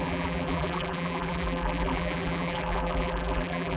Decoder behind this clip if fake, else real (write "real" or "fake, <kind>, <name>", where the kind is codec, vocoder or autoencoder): fake, vocoder, BigVGAN v2